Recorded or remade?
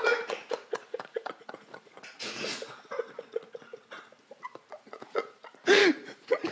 remade